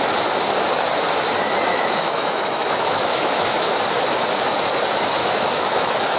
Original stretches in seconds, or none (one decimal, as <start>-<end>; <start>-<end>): 0.0-1.7; 3.7-5.2